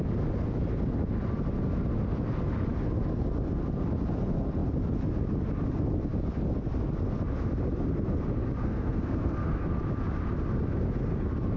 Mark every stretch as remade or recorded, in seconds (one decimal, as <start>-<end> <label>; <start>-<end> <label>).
0.0-8.6 recorded; 8.6-9.7 remade; 9.7-11.6 recorded